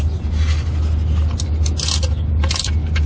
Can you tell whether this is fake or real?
real